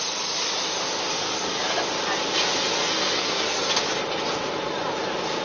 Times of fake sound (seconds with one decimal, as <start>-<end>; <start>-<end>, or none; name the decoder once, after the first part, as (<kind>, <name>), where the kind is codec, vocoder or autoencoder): 1.1-1.6 (codec, SNAC); 2.8-3.7